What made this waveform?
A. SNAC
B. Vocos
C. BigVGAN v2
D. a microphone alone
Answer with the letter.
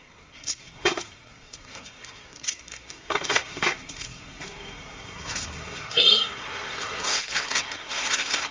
A